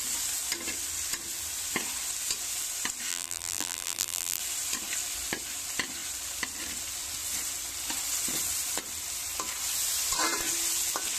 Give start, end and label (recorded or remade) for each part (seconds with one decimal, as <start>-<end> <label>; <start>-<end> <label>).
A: 0.0-3.1 recorded; 3.1-4.4 remade; 4.4-11.2 recorded